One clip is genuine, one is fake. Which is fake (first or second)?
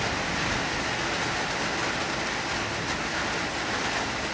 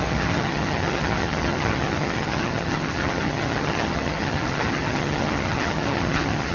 second